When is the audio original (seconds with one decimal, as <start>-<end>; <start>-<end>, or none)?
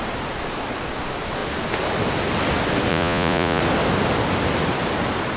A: 0.0-2.9; 3.6-5.4